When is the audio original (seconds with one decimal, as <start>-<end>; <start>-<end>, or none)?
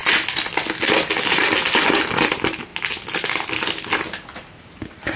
0.0-1.2; 2.7-4.6